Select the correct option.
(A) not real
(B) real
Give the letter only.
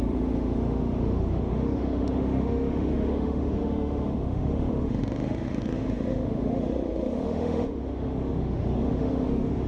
A